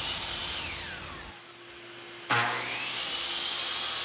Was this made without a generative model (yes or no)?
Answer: yes